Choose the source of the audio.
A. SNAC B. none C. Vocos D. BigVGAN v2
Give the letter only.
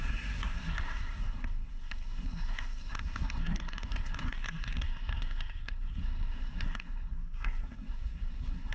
A